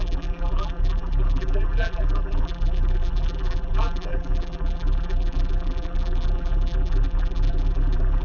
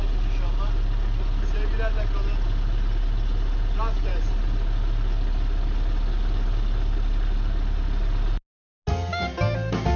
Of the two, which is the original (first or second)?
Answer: second